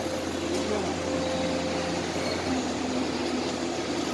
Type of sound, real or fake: real